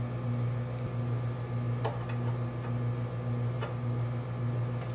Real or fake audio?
real